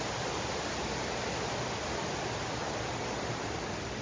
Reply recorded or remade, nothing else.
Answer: recorded